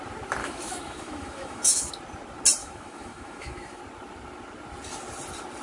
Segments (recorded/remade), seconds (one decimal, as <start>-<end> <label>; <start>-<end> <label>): 0.0-0.4 recorded; 0.4-1.9 remade; 1.9-2.6 recorded; 2.6-3.8 remade; 3.8-5.6 recorded